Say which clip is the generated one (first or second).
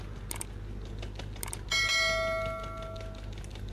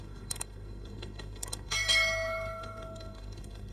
second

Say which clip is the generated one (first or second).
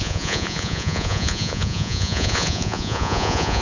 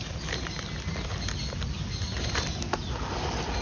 first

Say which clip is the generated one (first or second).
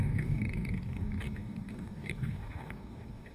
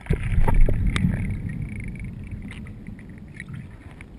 first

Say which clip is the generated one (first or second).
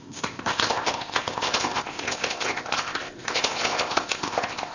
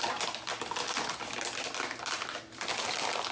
first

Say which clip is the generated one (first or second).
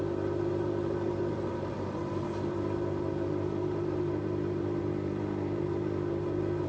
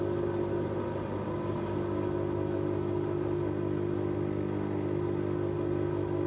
first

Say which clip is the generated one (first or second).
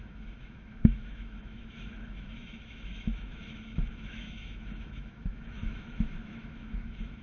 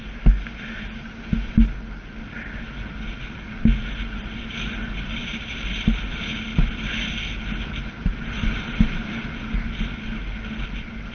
first